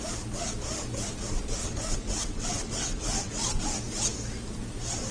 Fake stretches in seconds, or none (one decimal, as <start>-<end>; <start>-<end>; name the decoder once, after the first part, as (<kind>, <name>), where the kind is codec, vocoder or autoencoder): 1.6-3.6 (vocoder, WaveNeXt)